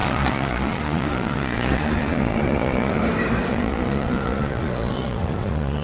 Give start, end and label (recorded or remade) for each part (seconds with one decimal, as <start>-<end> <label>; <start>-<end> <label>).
0.0-3.0 remade; 3.0-3.5 recorded; 3.5-5.8 remade